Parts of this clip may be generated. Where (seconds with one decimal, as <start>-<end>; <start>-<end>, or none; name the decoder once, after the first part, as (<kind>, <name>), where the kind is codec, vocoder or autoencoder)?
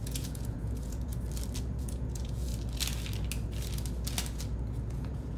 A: 0.0-1.1 (vocoder, Vocos); 1.6-2.5; 4.9-5.4